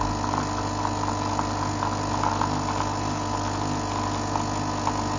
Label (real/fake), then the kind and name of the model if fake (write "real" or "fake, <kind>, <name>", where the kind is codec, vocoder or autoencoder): real